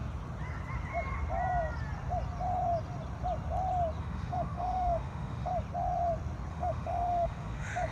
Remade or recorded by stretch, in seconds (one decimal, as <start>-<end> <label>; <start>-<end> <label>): 0.0-4.0 recorded; 4.0-5.5 remade; 5.5-6.5 recorded; 6.5-7.9 remade